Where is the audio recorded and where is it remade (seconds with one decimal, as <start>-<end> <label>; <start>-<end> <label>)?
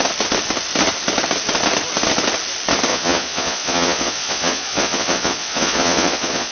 0.0-2.9 recorded; 2.9-6.5 remade